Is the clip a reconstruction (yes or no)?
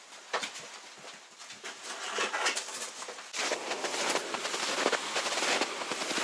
no